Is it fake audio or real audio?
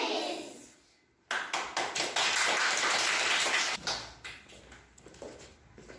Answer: real